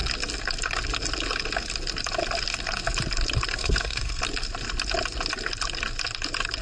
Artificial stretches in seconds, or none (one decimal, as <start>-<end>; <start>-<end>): 3.5-4.2